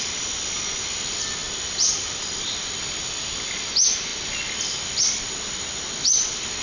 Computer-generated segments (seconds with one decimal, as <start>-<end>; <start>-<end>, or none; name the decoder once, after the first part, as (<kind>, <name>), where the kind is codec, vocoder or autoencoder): none